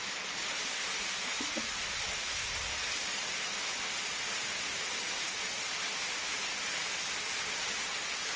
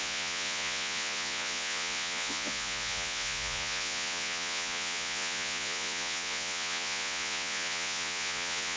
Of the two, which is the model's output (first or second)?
second